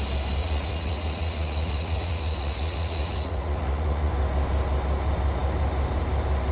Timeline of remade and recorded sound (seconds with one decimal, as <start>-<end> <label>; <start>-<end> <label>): 0.0-0.4 recorded; 0.4-4.1 remade; 4.1-6.5 recorded